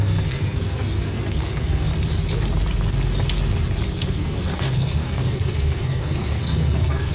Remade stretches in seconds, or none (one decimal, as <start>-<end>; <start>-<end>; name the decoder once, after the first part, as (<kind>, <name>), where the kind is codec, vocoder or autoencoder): 0.0-1.9 (codec, SNAC); 3.9-7.1